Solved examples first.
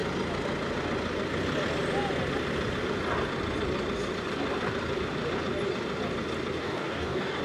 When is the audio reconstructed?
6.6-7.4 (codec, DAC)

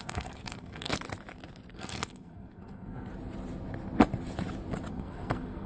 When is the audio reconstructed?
0.0-0.9 (codec, SNAC); 1.7-3.1; 4.9-5.7

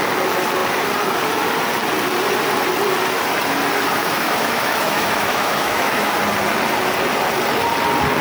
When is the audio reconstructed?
4.0-6.1 (autoencoder, DAC-VAE)

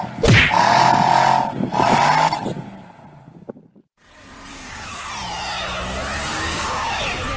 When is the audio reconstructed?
4.5-5.1 (codec, DAC); 6.3-7.0

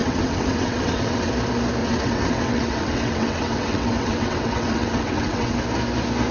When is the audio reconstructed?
0.0-1.3 (vocoder, WaveNeXt); 1.8-5.6